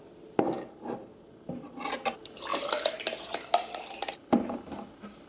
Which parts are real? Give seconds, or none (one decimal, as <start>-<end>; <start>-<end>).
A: 0.0-5.3